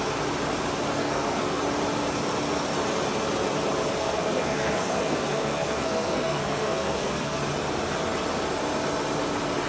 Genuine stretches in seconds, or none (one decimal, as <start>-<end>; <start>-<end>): 0.0-1.0; 1.6-4.0; 7.4-9.7